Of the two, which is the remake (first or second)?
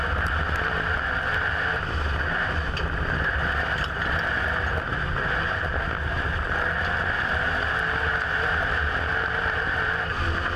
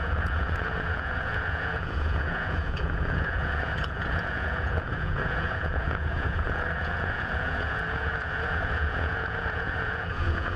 second